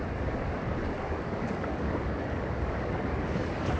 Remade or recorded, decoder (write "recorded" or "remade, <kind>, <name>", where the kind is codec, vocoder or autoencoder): remade, codec, DAC